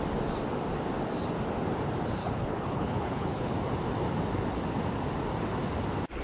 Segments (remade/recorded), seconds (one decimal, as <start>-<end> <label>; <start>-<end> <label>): 0.0-2.2 recorded; 2.2-3.5 remade; 3.5-6.2 recorded